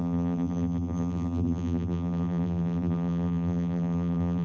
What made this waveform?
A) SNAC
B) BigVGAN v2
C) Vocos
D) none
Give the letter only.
B